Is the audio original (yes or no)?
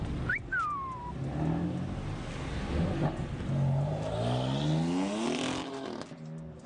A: yes